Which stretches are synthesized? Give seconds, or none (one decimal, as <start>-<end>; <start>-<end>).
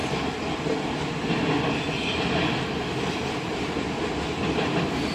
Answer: 3.1-5.1